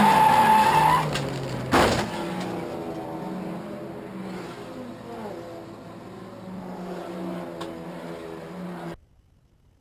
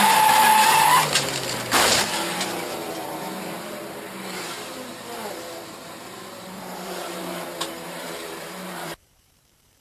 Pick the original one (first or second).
first